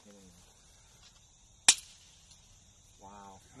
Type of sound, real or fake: real